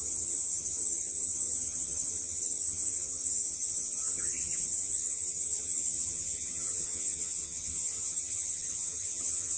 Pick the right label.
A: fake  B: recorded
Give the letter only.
A